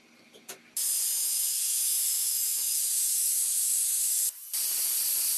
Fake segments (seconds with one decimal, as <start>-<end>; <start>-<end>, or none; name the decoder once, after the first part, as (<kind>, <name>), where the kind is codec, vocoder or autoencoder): 1.1-4.1 (autoencoder, DAC-VAE)